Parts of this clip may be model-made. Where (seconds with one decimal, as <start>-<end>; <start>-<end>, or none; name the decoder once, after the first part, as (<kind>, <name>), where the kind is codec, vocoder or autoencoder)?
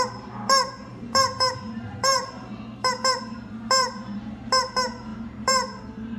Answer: 0.0-6.2 (vocoder, BigVGAN v2)